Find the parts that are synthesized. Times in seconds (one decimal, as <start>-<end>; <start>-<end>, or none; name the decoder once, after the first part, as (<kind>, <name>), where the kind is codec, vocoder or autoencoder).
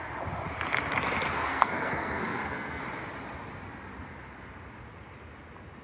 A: 1.5-2.8 (codec, SNAC)